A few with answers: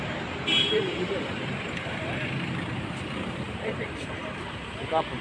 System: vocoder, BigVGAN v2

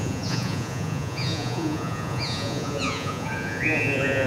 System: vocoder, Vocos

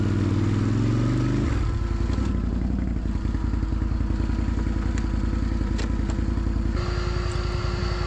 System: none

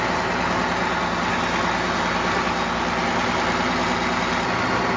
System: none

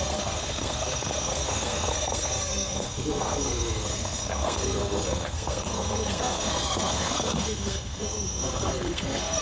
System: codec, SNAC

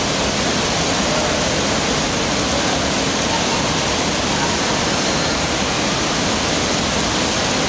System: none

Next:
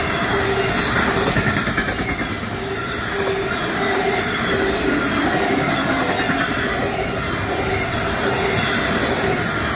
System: none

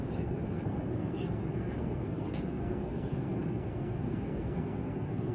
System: codec, SNAC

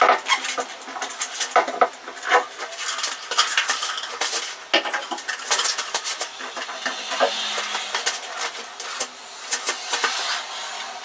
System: none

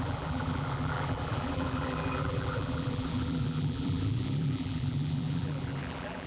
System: vocoder, BigVGAN v2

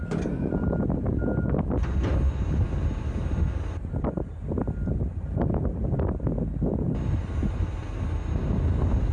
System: none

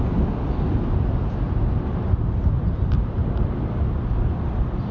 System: none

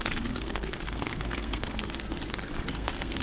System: codec, SNAC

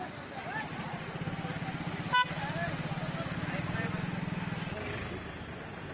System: none